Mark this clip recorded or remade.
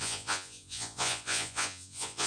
remade